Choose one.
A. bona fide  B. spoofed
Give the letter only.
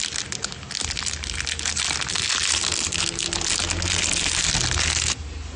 A